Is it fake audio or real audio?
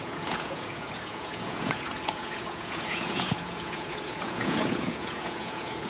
fake